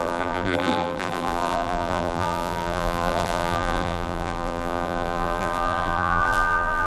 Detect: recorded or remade remade